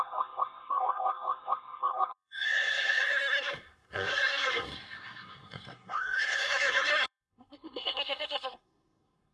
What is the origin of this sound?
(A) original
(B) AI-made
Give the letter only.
B